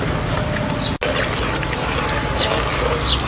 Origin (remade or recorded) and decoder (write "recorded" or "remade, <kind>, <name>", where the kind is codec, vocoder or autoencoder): recorded